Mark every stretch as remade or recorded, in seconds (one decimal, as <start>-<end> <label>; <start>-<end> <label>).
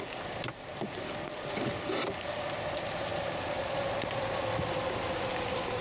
0.0-5.8 recorded